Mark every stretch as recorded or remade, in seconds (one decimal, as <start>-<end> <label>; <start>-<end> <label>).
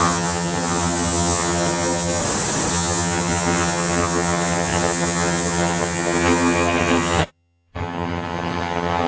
0.0-2.2 remade; 2.2-2.7 recorded; 2.7-9.1 remade